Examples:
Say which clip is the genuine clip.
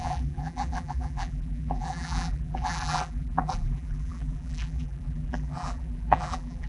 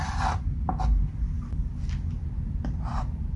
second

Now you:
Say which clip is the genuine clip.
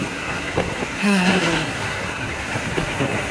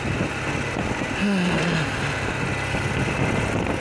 second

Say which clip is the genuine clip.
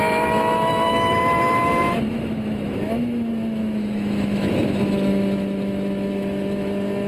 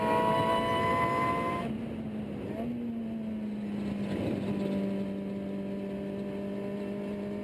second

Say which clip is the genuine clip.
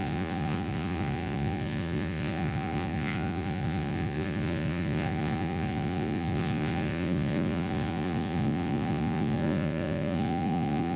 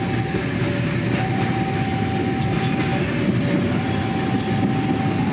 second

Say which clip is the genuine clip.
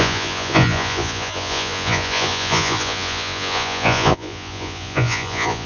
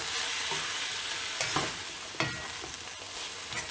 second